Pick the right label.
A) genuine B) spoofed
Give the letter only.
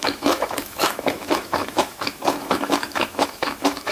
B